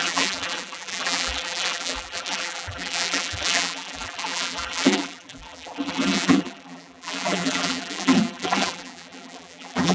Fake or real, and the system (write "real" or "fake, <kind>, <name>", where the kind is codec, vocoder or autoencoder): fake, vocoder, BigVGAN v2